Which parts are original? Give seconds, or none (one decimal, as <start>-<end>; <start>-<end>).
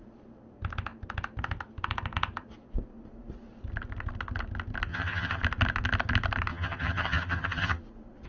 0.0-4.9; 5.4-6.5; 7.8-8.3